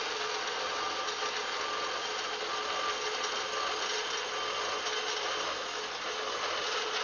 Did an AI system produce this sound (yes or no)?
no